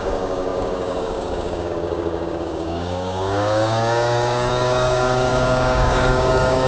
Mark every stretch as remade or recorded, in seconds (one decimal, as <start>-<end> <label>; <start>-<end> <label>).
0.0-6.7 remade